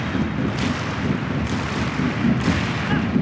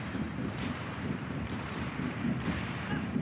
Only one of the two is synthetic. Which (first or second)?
second